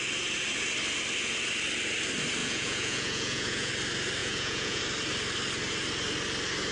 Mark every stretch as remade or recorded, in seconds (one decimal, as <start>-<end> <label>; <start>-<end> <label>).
0.0-2.4 recorded; 2.4-3.7 remade; 3.7-4.2 recorded; 4.2-4.8 remade; 4.8-6.7 recorded